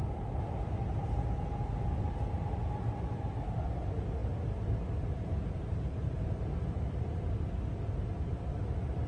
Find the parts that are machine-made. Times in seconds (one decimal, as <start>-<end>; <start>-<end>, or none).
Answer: none